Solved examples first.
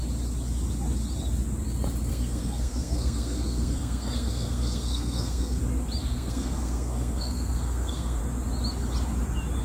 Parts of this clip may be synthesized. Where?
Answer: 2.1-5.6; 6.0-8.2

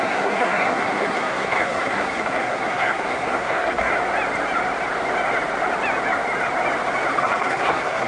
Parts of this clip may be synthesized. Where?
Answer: 0.0-3.9; 7.2-8.1

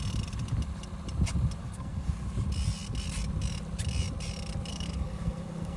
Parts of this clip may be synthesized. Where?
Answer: 1.6-2.1; 4.7-5.8

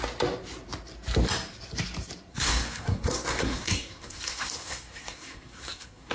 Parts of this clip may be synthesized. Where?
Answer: 2.3-6.1

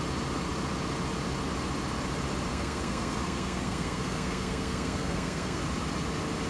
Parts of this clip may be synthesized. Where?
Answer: 2.5-5.6